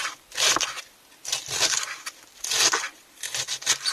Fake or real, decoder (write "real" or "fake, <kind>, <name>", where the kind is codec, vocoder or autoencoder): real